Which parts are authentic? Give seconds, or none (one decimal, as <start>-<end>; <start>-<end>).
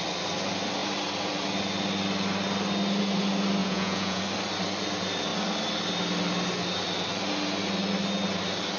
0.0-3.6; 4.2-8.8